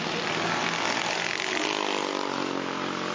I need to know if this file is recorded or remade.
recorded